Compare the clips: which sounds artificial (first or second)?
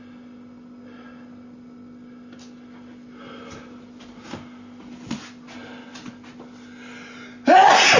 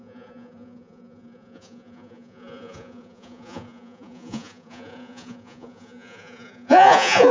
second